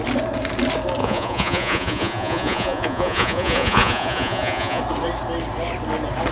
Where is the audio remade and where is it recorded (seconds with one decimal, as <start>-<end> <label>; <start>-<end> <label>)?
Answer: 0.0-1.0 recorded; 1.0-4.8 remade; 4.8-6.3 recorded